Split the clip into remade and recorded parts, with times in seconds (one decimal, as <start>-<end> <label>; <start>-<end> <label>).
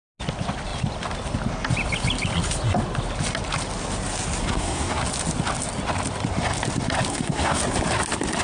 0.0-4.4 recorded; 4.4-5.0 remade; 5.0-7.1 recorded; 7.1-7.6 remade; 7.6-8.4 recorded